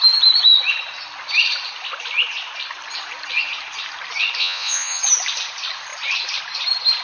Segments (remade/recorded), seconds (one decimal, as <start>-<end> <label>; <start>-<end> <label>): 0.0-4.4 recorded; 4.4-5.0 remade; 5.0-7.0 recorded